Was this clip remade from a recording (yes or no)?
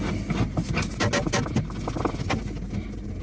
no